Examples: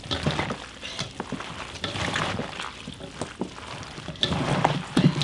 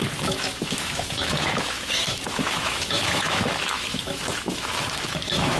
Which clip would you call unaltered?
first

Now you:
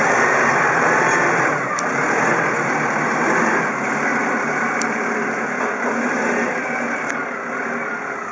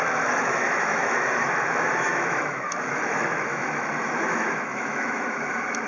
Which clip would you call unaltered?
first